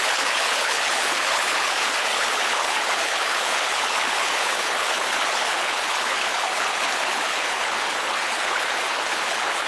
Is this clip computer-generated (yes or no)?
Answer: yes